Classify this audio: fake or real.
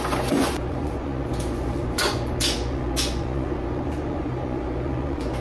fake